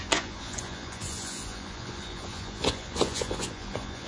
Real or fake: fake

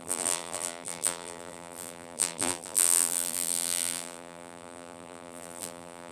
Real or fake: fake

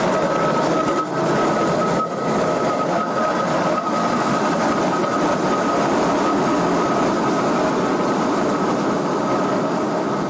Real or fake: real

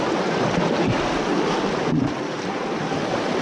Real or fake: real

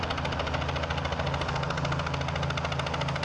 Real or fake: real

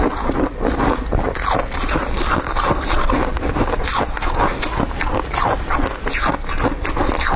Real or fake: real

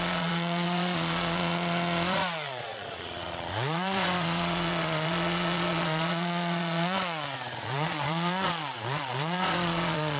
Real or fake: fake